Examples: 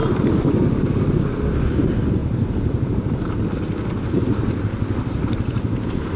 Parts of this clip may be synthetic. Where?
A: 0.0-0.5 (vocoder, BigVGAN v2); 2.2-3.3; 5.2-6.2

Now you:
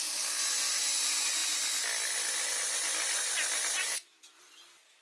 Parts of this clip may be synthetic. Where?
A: none